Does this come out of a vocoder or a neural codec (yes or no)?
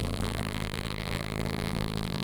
yes